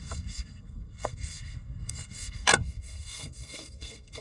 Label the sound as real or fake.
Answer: fake